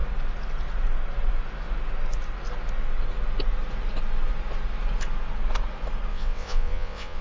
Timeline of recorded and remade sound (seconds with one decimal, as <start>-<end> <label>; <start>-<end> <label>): 0.0-6.1 recorded; 6.1-7.2 remade